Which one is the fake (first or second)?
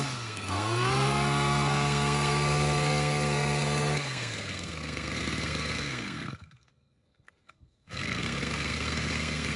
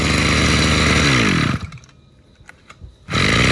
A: first